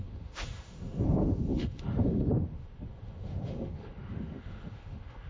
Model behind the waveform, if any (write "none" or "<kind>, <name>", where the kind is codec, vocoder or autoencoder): autoencoder, DAC-VAE